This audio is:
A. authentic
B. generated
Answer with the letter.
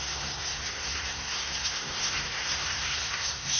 B